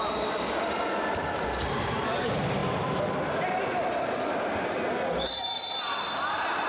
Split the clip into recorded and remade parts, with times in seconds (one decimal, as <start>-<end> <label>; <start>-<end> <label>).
0.0-6.7 recorded

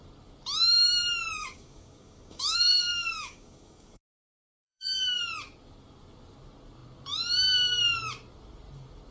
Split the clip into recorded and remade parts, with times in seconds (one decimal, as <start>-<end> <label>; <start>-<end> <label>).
0.0-1.4 recorded; 1.4-5.2 remade; 5.2-9.1 recorded

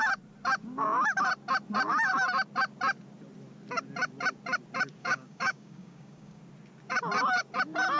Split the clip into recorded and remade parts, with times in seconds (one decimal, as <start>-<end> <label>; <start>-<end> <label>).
0.0-5.0 recorded; 5.0-6.4 remade; 6.4-8.0 recorded

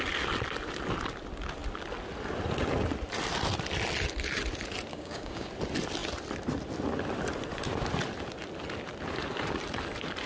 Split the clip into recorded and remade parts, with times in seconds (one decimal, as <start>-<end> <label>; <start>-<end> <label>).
0.0-4.9 recorded; 4.9-5.5 remade; 5.5-10.3 recorded

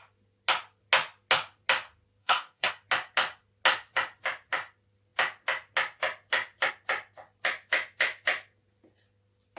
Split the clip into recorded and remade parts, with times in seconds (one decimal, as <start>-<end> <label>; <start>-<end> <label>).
0.0-2.2 recorded; 2.2-2.7 remade; 2.7-9.6 recorded

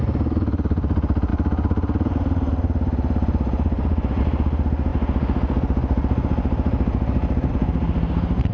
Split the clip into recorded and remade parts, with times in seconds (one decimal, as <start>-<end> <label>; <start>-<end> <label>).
0.0-8.5 recorded